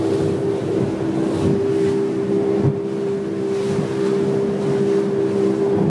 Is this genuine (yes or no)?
yes